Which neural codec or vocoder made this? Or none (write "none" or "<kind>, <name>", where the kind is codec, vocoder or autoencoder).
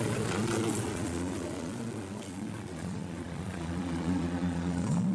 vocoder, Vocos